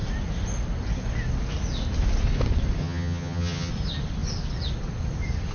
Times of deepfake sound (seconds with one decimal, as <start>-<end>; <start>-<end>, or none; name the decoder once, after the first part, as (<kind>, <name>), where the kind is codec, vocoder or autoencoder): 2.8-3.7 (vocoder, HiFi-GAN)